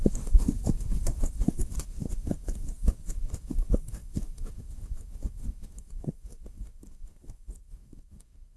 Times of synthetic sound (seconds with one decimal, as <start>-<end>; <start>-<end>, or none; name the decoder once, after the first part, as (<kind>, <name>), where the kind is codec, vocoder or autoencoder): 0.0-8.6 (codec, SNAC)